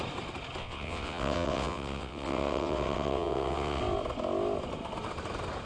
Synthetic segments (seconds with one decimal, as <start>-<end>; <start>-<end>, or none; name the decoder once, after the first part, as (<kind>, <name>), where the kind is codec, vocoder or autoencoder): 0.6-3.8 (vocoder, WaveNeXt)